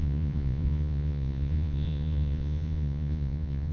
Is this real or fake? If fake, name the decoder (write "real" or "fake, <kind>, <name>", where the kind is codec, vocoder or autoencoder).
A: fake, vocoder, Vocos